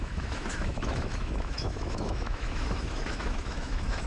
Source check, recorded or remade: remade